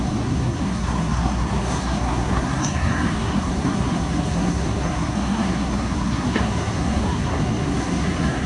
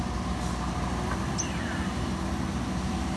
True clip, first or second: second